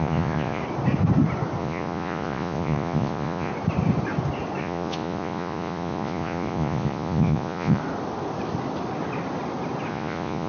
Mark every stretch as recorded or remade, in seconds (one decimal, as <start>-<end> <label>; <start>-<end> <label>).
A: 0.0-0.6 remade; 0.6-1.6 recorded; 1.6-3.5 remade; 3.5-4.6 recorded; 4.6-7.8 remade; 7.8-9.9 recorded; 9.9-10.5 remade